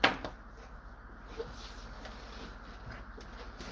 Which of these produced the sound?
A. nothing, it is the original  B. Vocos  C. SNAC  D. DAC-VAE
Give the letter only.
A